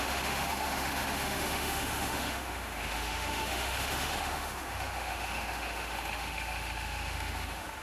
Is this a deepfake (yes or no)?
yes